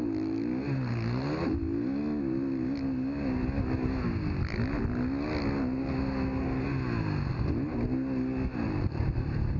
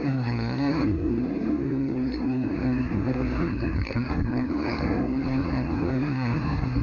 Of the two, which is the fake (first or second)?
second